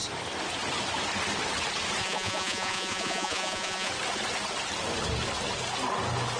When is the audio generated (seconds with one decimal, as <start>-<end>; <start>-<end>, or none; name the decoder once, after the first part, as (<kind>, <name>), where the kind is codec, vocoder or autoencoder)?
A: 2.0-3.9 (vocoder, Vocos)